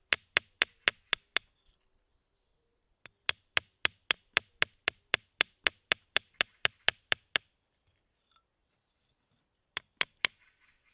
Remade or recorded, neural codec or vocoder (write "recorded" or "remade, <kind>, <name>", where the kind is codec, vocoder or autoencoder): remade, vocoder, BigVGAN v2